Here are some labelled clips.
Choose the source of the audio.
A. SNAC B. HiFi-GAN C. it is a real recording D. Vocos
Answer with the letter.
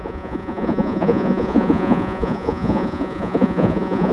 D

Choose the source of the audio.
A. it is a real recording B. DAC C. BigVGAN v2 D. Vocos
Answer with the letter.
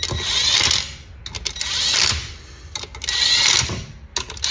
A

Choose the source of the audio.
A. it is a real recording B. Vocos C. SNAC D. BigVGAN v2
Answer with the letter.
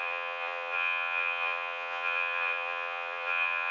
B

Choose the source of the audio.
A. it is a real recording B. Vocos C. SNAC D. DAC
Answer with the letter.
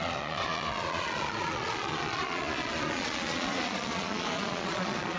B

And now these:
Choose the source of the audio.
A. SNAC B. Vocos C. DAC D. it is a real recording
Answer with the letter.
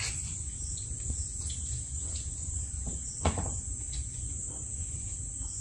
B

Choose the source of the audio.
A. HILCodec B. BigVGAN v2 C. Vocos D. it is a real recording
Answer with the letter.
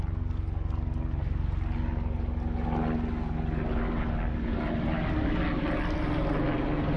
D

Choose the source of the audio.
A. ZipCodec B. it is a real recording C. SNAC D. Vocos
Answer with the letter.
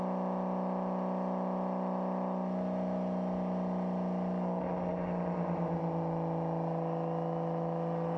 B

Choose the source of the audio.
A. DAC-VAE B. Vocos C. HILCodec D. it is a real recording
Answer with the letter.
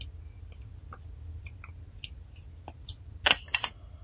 D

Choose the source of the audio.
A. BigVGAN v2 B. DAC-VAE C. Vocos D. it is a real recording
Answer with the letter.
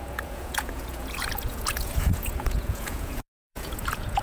C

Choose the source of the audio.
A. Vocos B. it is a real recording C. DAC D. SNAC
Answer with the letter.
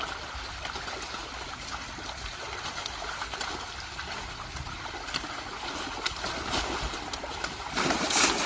B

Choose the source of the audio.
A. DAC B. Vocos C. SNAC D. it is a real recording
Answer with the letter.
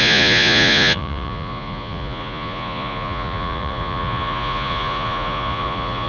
B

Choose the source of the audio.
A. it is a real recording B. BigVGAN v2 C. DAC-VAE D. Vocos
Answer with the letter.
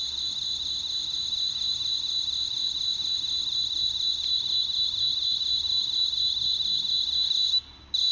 A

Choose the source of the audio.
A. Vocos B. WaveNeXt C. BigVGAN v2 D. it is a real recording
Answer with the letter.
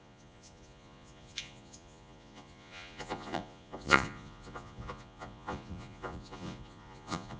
A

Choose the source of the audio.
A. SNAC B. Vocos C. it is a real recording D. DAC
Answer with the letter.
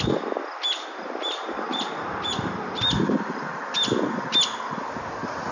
C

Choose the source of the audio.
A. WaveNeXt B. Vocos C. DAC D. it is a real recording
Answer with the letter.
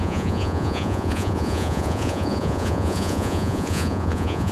B